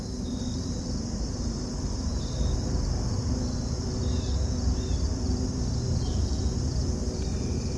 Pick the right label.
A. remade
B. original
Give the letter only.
A